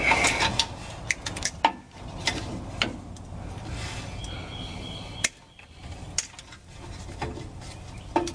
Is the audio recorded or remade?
recorded